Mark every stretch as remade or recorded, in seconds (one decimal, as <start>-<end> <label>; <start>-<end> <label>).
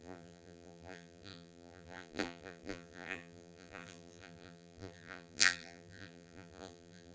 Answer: 0.0-7.1 remade